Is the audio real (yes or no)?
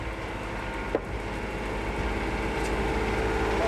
yes